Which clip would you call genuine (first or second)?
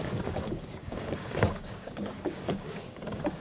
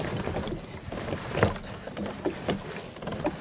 second